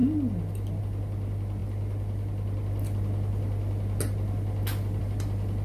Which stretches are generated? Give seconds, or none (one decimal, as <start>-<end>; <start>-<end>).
none

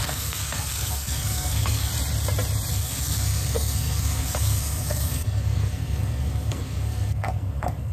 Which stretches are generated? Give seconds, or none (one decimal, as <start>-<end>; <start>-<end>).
0.0-1.9; 2.7-7.9

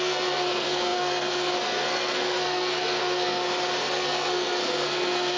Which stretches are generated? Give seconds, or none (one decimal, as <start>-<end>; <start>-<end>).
0.0-3.4; 3.9-5.4

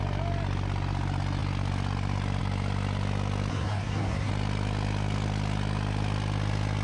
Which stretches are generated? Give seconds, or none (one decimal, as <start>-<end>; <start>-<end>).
3.5-4.3

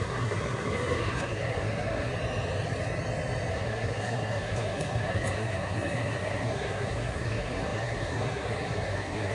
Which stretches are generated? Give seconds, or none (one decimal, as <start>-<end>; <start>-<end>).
0.0-2.1; 3.5-9.3